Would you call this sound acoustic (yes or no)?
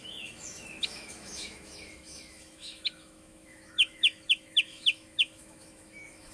no